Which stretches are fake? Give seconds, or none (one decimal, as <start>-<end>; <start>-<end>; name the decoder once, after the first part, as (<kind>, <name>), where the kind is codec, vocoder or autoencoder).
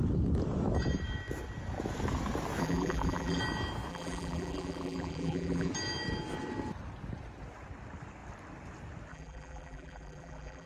2.6-3.4 (vocoder, BigVGAN v2); 3.9-5.7; 9.1-10.7